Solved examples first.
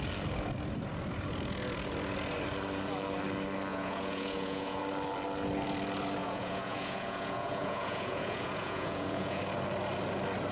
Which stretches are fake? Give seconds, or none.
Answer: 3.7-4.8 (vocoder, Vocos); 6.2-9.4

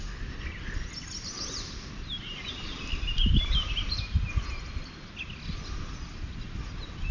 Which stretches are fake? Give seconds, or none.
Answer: none

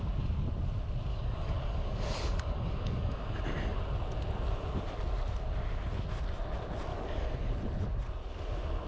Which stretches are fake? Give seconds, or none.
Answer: 1.1-3.4 (codec, DAC); 6.9-7.5

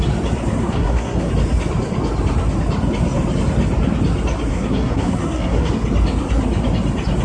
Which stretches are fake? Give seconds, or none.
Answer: 0.6-1.3 (codec, SNAC); 4.5-5.7